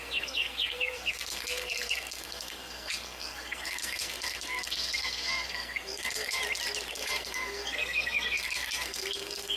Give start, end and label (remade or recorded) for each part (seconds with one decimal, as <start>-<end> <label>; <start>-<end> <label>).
0.0-6.4 remade; 6.4-6.9 recorded; 6.9-9.6 remade